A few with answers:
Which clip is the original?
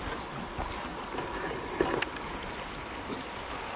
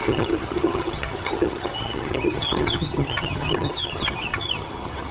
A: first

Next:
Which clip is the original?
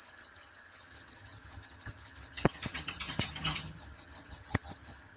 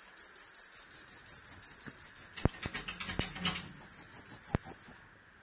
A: second